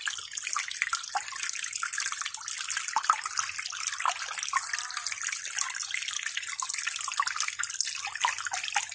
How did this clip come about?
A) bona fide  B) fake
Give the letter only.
A